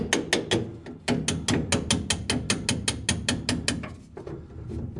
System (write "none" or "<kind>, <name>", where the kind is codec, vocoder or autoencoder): none